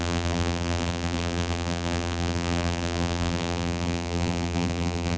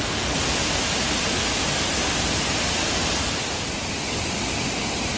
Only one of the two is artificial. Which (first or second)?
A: first